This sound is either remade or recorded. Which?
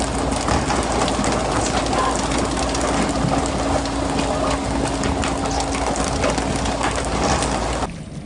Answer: recorded